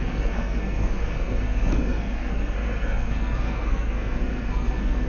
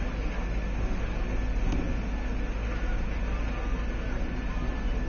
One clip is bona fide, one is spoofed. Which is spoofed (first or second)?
first